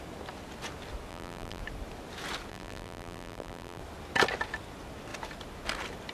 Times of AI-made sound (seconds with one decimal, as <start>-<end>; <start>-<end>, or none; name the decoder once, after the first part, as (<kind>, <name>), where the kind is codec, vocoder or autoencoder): 1.1-1.6 (vocoder, BigVGAN v2); 2.5-3.8